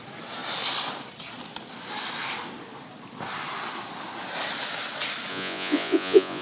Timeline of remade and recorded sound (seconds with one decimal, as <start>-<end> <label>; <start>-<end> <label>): 0.0-5.3 recorded; 5.3-6.4 remade